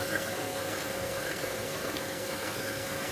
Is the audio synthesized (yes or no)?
yes